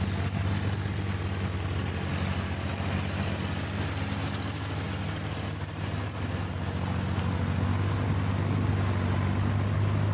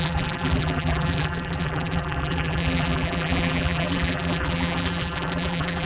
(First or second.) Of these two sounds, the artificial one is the second